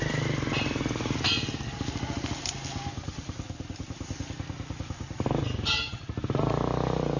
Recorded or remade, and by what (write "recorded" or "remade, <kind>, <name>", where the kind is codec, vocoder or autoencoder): recorded